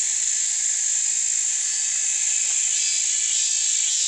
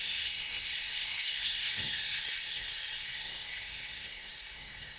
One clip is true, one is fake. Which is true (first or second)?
first